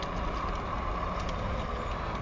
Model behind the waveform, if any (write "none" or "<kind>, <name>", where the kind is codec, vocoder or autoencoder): none